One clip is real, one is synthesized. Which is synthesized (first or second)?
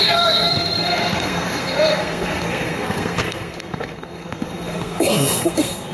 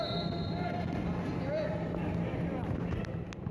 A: first